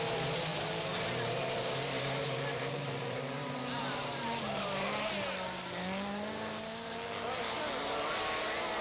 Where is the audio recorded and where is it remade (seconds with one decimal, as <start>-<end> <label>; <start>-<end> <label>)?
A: 0.0-0.5 recorded; 0.5-5.1 remade; 5.1-8.8 recorded